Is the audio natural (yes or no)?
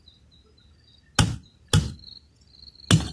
yes